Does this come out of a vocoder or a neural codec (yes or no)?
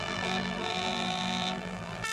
yes